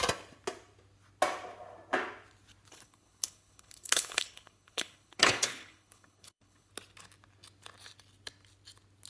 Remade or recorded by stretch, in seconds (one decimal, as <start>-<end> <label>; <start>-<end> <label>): 0.0-2.7 recorded; 2.7-6.7 remade; 6.7-9.1 recorded